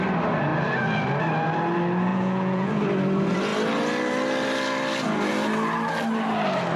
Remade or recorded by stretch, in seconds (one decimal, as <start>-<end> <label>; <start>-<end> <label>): 0.0-2.1 recorded; 2.1-2.7 remade; 2.7-6.8 recorded